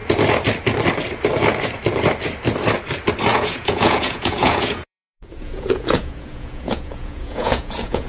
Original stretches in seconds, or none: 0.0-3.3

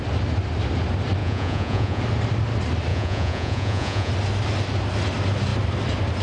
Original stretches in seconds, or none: 0.0-1.2; 2.0-2.9; 4.1-6.2

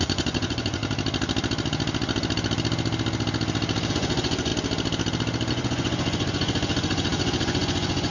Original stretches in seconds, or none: 0.8-3.9; 4.5-5.5